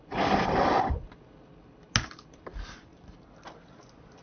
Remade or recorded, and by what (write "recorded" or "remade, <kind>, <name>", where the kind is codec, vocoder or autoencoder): recorded